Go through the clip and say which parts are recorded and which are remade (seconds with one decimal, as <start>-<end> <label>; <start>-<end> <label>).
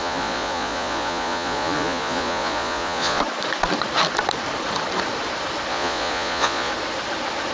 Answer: 0.0-3.2 remade; 3.2-5.7 recorded; 5.7-6.7 remade; 6.7-7.5 recorded